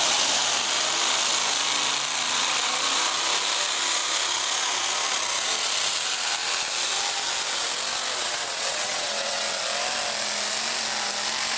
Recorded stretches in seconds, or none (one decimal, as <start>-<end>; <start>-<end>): 0.0-8.2; 9.6-11.6